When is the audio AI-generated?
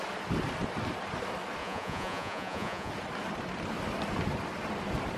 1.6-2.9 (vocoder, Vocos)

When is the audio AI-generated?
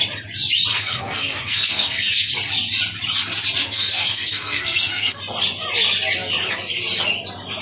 0.7-2.3 (codec, SNAC); 3.6-5.2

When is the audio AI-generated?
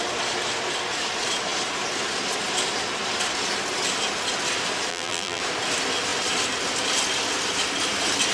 4.9-5.4 (vocoder, BigVGAN v2)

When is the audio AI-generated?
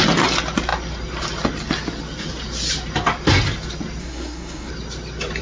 4.0-4.7 (codec, SNAC)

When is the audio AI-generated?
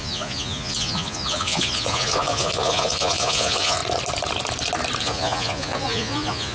0.0-3.8 (vocoder, Vocos); 5.0-6.5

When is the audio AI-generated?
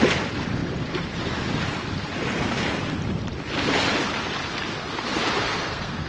5.4-6.1 (codec, SNAC)